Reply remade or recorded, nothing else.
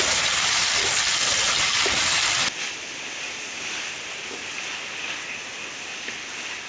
recorded